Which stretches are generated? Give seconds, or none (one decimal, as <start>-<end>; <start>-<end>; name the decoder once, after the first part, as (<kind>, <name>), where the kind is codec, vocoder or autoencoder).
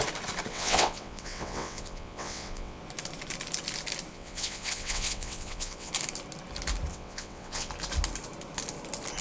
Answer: 0.5-2.8 (vocoder, WaveNeXt); 4.1-5.9; 6.9-7.7